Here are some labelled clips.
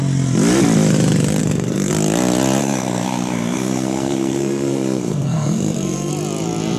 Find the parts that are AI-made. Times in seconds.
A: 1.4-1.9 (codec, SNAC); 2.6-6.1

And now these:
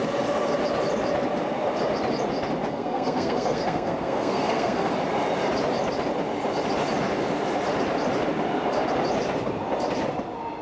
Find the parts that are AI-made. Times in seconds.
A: 2.7-4.9 (codec, SNAC)

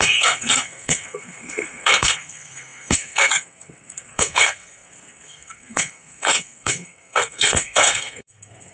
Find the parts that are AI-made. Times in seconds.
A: 0.0-8.7 (codec, SNAC)

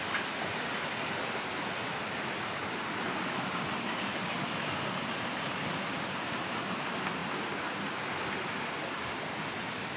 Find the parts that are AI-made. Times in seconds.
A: none

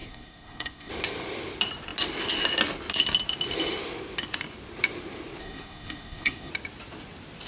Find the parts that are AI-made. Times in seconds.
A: 0.0-0.9 (codec, SNAC); 5.4-6.5

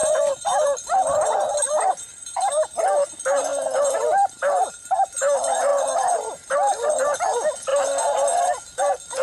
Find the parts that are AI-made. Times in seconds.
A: none

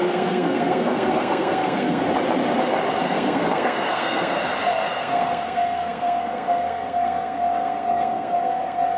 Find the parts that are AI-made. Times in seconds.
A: 0.0-2.0 (codec, SNAC); 3.0-4.4; 4.9-9.0